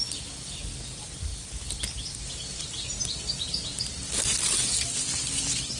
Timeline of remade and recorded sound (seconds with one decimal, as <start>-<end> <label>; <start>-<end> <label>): 0.0-5.8 recorded